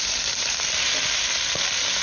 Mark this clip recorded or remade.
remade